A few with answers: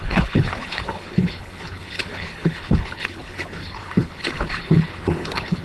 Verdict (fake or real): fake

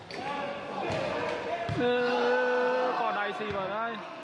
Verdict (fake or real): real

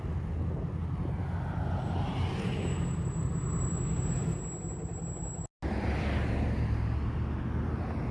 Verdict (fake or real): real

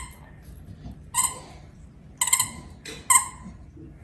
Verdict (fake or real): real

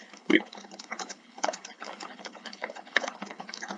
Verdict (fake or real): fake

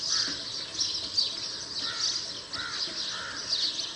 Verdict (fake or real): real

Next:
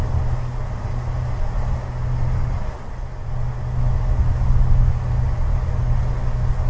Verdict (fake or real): real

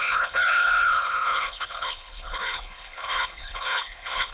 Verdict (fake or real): fake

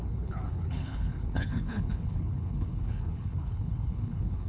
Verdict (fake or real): fake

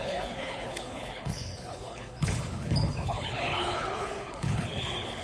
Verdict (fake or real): fake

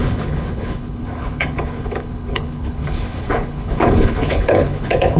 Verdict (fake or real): fake